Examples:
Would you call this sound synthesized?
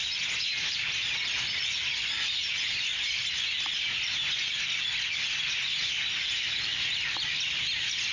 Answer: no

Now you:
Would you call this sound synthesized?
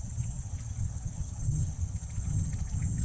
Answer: yes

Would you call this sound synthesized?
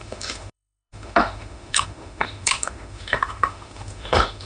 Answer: yes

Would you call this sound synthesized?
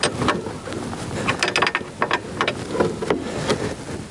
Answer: no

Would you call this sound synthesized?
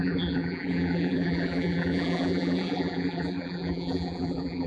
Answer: yes